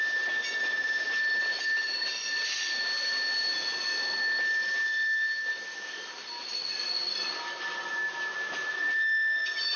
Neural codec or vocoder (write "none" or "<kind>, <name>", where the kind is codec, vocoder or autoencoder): none